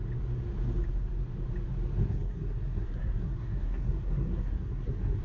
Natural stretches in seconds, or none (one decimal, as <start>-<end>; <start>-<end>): 0.0-2.0